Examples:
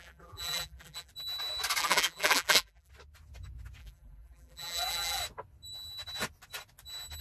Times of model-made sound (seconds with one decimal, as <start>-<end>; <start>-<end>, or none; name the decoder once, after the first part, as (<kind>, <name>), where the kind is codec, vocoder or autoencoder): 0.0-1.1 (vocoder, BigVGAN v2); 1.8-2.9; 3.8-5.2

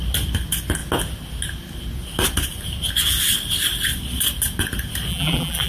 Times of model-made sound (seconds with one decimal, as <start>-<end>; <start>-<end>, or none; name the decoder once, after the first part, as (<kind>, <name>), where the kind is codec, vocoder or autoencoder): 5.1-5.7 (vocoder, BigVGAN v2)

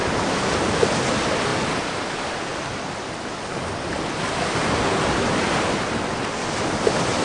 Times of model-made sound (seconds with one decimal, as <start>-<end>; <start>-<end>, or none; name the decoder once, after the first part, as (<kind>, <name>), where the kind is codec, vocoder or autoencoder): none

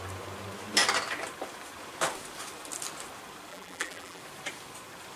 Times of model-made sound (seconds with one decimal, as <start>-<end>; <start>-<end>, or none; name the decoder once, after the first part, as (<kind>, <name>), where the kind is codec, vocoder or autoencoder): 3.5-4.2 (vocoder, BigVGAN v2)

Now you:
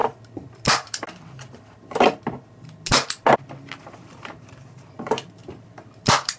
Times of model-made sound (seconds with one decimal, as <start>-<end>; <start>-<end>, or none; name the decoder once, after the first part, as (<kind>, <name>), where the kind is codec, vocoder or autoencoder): 3.8-5.4 (vocoder, BigVGAN v2)